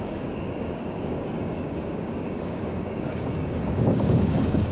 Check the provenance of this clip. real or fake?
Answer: fake